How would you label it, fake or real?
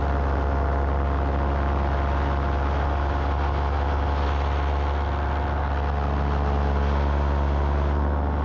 real